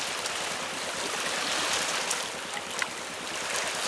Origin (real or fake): real